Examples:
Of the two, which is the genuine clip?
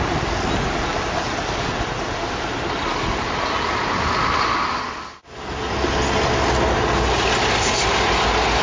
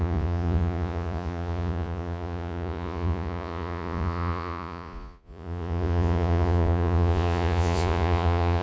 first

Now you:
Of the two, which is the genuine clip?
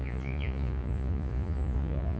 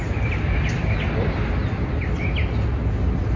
second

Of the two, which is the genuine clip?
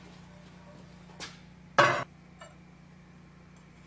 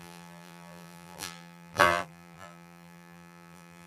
first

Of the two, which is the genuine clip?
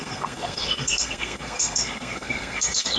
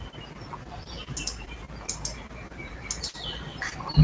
second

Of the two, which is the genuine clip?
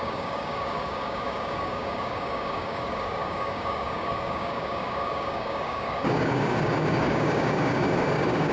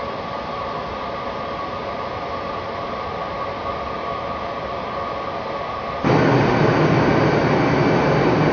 second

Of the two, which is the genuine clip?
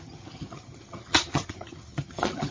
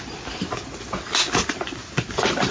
second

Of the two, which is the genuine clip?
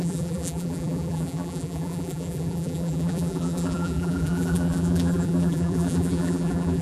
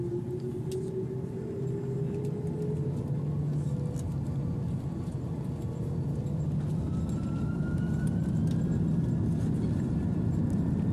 second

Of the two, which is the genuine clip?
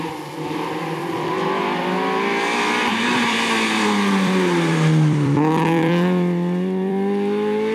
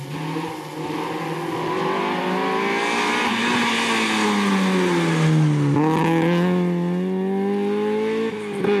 second